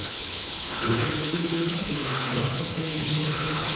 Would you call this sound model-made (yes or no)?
yes